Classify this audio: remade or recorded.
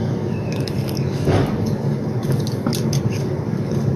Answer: remade